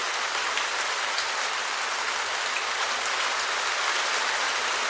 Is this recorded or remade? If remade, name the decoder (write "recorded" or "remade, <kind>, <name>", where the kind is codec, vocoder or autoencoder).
recorded